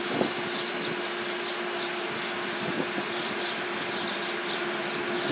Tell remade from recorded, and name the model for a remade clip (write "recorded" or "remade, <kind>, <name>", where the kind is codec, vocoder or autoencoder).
recorded